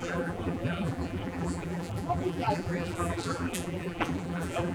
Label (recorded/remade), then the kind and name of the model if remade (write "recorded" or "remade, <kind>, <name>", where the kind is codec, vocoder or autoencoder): remade, vocoder, BigVGAN v2